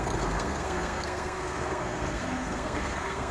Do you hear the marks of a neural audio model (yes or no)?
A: yes